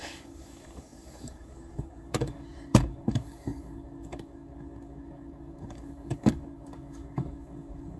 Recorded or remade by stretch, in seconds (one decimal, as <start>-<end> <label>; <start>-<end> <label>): 0.0-8.0 remade